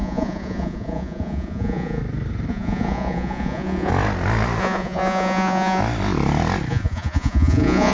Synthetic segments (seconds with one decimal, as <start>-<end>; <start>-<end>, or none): 0.0-2.0; 2.5-3.9; 4.6-5.8; 6.7-7.9